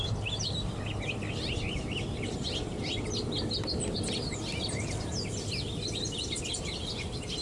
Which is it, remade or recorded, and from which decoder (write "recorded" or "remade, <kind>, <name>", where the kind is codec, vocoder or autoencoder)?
recorded